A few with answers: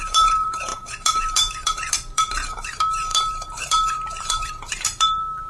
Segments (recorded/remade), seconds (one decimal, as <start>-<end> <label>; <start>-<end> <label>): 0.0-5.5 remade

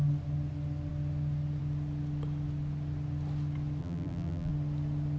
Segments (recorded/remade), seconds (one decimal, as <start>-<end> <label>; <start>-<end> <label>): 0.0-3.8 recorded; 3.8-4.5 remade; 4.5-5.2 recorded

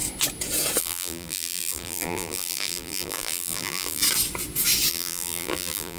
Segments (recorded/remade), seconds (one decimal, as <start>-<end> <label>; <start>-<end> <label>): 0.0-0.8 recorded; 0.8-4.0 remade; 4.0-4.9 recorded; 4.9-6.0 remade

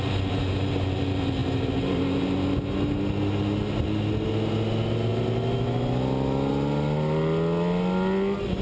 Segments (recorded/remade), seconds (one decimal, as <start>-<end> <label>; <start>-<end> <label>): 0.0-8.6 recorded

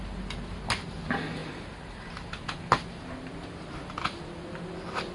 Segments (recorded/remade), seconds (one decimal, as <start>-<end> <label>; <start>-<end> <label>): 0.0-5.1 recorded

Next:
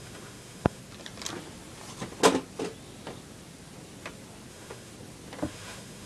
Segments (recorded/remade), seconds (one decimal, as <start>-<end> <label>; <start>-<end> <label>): 0.0-0.8 remade; 0.8-4.5 recorded; 4.5-4.9 remade; 4.9-5.4 recorded; 5.4-6.1 remade